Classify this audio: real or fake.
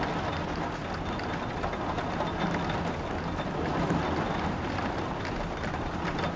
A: real